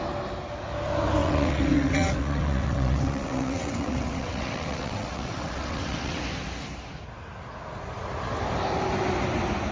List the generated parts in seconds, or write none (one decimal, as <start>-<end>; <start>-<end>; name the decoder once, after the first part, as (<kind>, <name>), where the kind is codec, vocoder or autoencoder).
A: 1.2-6.2 (vocoder, WaveNeXt)

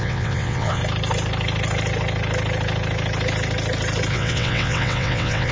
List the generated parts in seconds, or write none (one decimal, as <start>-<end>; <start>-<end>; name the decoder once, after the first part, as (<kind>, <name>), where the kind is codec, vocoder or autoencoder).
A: 0.0-0.8 (vocoder, WaveNeXt); 4.1-5.5

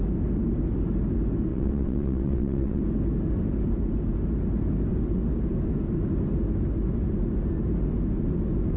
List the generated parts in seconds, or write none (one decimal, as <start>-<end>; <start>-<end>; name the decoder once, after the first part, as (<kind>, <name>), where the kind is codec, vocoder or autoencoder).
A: 1.5-2.8 (vocoder, WaveNeXt)

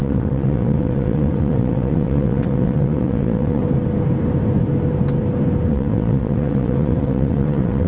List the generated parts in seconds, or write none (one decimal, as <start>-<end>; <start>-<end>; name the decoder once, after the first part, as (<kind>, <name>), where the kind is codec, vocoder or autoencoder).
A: 0.0-3.6 (vocoder, WaveNeXt); 5.7-7.9

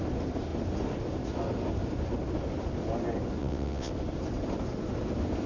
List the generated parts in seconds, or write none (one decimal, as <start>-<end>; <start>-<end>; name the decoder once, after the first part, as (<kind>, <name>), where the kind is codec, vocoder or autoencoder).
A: 3.4-3.9 (vocoder, WaveNeXt)

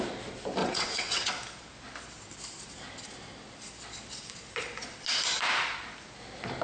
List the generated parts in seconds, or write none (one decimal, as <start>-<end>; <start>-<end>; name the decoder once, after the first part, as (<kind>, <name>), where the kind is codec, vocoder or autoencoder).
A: 0.6-1.3 (vocoder, WaveNeXt)

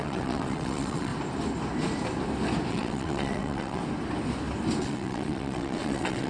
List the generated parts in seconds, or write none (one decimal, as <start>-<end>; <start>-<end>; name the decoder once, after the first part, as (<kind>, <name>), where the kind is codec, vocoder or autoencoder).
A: 0.0-1.1 (vocoder, WaveNeXt); 2.7-3.8; 4.8-6.3